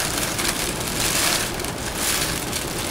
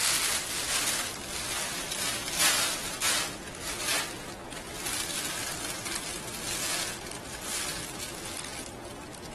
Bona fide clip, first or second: second